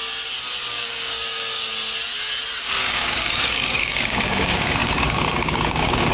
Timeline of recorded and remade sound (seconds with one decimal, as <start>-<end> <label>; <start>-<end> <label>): 0.0-0.7 recorded; 0.7-1.7 remade; 1.7-2.6 recorded; 2.6-6.1 remade